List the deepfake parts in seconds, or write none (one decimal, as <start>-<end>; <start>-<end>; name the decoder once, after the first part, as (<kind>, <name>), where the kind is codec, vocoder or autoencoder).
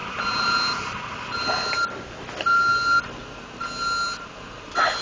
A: none